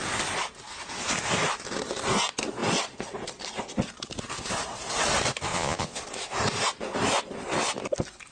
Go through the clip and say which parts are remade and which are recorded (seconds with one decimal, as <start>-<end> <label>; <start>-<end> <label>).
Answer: 0.0-5.5 recorded; 5.5-6.0 remade; 6.0-8.3 recorded

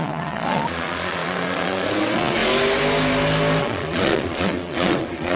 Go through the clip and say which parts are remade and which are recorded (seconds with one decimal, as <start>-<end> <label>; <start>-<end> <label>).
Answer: 0.0-2.4 remade; 2.4-3.6 recorded; 3.6-5.4 remade

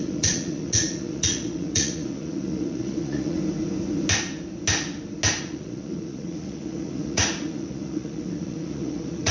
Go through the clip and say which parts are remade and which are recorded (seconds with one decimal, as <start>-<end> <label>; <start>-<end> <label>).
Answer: 0.0-3.4 remade; 3.4-5.4 recorded; 5.4-9.3 remade